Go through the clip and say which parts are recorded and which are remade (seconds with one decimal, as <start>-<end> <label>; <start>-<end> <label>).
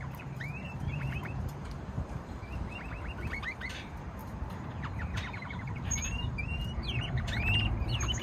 0.0-2.4 remade; 2.4-3.3 recorded; 3.3-8.2 remade